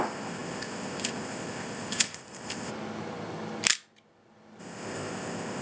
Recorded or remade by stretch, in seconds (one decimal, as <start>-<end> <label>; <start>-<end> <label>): 0.0-2.7 remade; 2.7-4.6 recorded; 4.6-5.6 remade